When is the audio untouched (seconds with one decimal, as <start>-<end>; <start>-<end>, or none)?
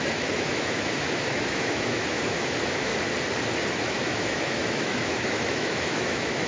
2.9-3.7